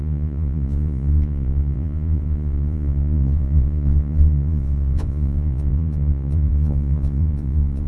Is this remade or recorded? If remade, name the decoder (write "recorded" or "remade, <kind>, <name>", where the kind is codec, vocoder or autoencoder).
remade, vocoder, Vocos